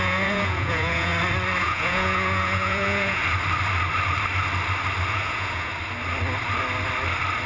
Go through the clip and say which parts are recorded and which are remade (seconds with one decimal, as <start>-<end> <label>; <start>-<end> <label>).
0.0-1.1 remade; 1.1-1.6 recorded; 1.6-3.2 remade; 3.2-5.1 recorded; 5.1-5.7 remade; 5.7-7.5 recorded